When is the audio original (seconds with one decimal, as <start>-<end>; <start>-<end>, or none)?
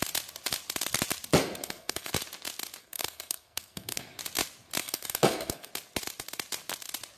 0.0-1.4; 2.1-2.8; 4.2-4.8; 5.7-7.2